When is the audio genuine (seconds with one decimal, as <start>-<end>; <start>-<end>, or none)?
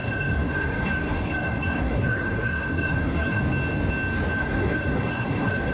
3.4-4.4